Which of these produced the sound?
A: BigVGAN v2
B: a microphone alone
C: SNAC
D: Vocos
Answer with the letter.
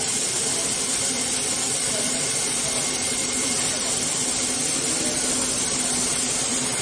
A